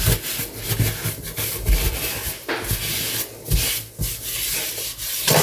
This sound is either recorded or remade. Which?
recorded